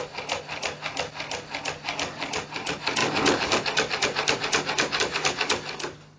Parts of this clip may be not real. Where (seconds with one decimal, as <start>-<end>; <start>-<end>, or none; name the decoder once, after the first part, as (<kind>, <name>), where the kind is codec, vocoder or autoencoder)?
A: none